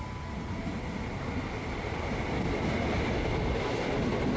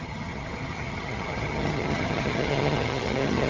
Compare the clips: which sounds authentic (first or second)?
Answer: first